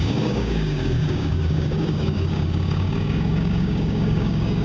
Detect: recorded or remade remade